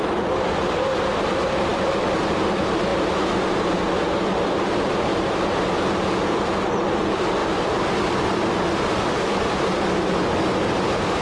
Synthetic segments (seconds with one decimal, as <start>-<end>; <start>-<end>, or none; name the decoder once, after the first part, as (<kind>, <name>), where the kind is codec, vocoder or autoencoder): 0.0-1.7 (vocoder, BigVGAN v2); 2.2-2.9; 6.2-11.2